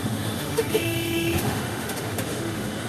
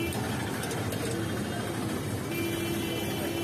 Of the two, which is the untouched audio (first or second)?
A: second